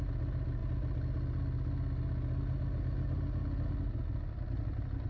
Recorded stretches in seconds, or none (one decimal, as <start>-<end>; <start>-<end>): 0.0-5.1